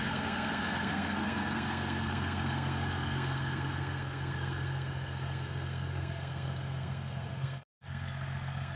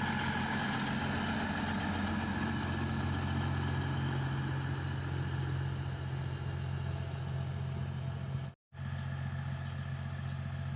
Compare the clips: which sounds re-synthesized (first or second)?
first